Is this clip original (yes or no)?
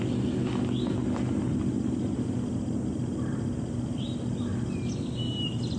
yes